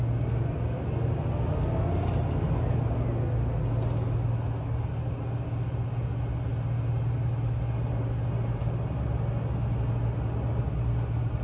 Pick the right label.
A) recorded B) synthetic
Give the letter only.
A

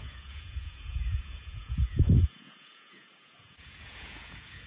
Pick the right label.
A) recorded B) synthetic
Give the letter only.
B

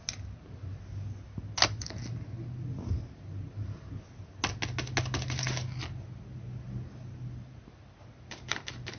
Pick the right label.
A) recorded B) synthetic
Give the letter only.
A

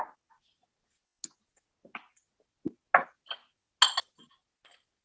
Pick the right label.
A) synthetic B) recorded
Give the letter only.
B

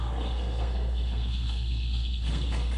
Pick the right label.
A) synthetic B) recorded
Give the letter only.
A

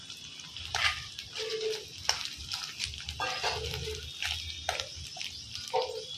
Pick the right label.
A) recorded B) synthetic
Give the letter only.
A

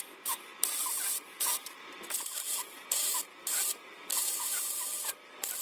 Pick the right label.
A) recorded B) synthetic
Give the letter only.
B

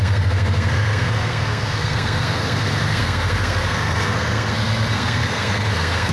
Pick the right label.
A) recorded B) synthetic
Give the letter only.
B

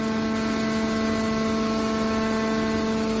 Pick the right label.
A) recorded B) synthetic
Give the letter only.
A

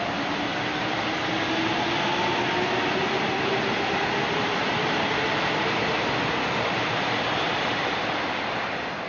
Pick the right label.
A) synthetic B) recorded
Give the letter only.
B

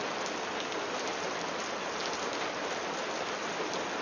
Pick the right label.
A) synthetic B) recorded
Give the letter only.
B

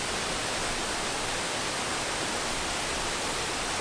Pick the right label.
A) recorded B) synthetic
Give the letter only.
A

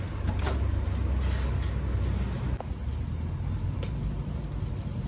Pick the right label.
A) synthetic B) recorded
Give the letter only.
B